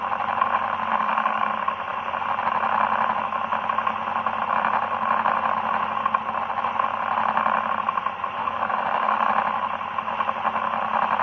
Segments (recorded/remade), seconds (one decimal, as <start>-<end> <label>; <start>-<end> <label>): 0.0-0.9 recorded; 0.9-1.5 remade; 1.5-8.4 recorded; 8.4-9.3 remade; 9.3-11.2 recorded